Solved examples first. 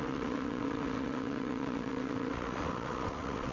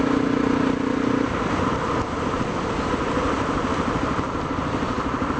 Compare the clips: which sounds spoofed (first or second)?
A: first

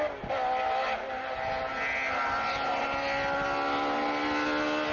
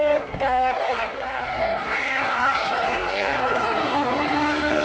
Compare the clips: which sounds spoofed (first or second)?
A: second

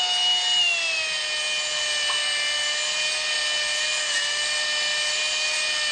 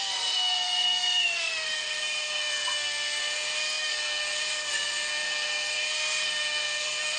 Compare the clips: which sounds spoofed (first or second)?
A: second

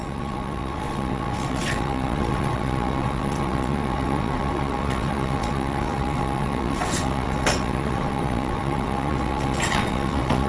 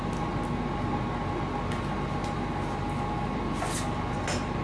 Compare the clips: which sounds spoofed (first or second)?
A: first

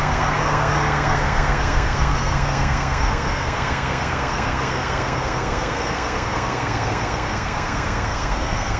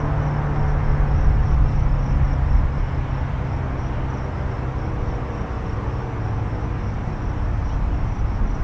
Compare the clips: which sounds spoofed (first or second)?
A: first